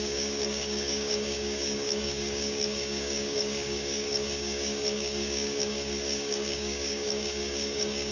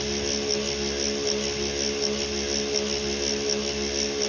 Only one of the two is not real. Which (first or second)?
first